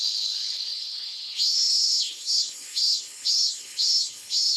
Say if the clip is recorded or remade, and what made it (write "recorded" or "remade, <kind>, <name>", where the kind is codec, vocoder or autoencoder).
remade, codec, HILCodec